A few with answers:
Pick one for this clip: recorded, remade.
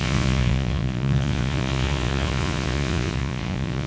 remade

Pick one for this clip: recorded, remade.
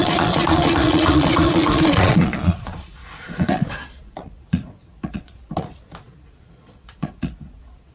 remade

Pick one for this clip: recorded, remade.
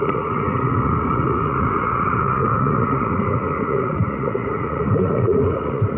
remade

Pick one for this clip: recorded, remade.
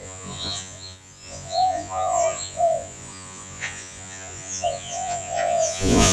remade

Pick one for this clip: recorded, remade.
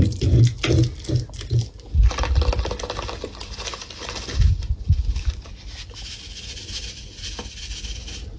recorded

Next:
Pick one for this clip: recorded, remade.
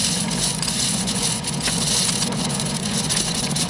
remade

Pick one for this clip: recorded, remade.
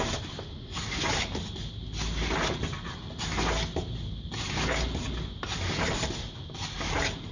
recorded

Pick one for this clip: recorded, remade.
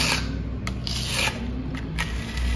recorded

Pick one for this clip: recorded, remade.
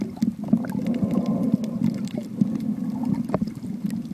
recorded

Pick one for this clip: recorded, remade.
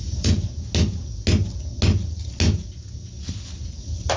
recorded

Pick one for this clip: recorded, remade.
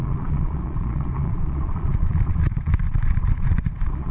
remade